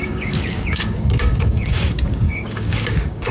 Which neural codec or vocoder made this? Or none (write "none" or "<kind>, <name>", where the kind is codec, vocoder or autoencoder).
codec, DAC